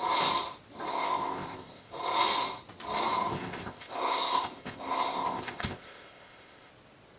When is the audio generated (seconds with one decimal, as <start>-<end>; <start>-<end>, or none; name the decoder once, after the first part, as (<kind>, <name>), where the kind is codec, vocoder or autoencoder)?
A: 0.9-1.9 (codec, ZipCodec); 3.3-6.7

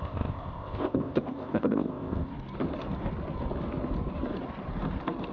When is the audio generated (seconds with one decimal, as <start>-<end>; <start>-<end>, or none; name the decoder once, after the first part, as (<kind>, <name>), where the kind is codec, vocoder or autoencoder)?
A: 0.0-2.3 (codec, ZipCodec)

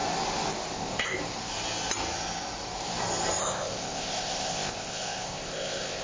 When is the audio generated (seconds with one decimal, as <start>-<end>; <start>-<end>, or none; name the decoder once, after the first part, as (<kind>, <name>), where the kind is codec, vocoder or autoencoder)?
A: 0.7-1.2 (codec, ZipCodec); 3.4-6.0

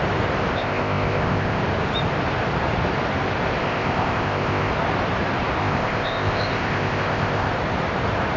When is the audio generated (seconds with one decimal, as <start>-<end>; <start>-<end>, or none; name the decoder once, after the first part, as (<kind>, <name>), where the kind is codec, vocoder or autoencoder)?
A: 0.5-1.6 (codec, ZipCodec); 3.6-4.7; 5.6-7.5

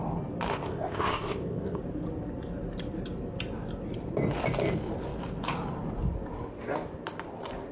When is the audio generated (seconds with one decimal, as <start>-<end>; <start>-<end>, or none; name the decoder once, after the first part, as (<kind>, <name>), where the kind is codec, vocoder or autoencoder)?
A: 0.5-1.8 (codec, ZipCodec)

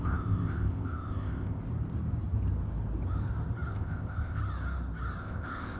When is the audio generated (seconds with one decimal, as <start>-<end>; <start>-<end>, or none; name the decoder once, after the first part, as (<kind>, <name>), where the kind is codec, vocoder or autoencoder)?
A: 0.0-1.6 (codec, ZipCodec); 3.7-4.4; 5.2-5.8

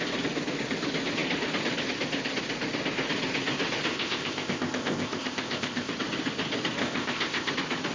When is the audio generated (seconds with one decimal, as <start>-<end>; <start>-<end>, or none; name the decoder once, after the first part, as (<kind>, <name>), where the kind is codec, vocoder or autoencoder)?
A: 3.9-5.9 (codec, ZipCodec); 6.8-7.5

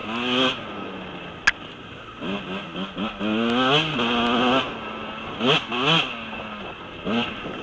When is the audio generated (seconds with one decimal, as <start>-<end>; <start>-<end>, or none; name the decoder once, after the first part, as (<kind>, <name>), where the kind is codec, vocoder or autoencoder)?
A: none